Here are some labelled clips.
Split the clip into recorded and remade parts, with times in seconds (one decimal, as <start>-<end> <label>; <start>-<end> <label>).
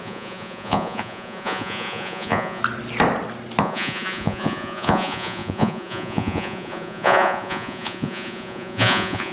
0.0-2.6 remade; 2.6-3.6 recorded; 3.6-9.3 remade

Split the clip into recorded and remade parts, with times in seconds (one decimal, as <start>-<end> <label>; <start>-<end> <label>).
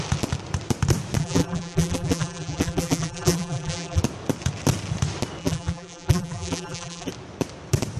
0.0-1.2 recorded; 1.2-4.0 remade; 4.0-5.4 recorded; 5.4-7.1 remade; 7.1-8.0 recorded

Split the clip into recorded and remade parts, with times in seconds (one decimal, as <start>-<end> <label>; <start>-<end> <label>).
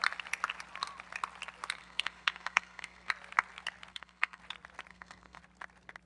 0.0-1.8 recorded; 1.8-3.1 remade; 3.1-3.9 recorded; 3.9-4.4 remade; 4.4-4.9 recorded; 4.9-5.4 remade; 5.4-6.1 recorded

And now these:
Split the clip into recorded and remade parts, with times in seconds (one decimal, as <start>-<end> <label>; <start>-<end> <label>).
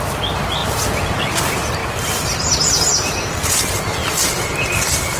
0.0-4.0 recorded; 4.0-5.2 remade